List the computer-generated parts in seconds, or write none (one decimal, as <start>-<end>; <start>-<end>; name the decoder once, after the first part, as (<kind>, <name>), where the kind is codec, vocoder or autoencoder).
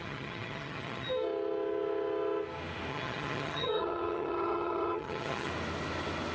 0.0-1.1 (vocoder, HiFi-GAN); 2.9-5.5